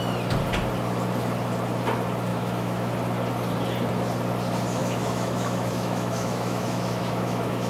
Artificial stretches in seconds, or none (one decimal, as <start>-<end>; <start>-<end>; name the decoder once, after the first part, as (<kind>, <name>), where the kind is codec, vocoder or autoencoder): 2.3-2.9 (autoencoder, DAC-VAE); 4.8-7.7